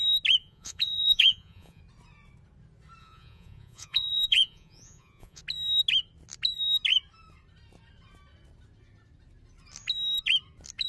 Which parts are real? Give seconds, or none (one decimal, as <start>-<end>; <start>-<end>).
0.0-0.4; 1.8-3.0; 5.4-10.9